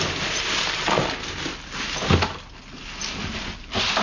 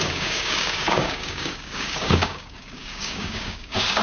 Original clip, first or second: first